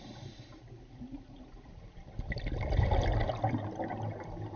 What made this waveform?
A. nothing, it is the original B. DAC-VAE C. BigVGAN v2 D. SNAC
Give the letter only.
A